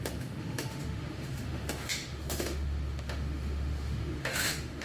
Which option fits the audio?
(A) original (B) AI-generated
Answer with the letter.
B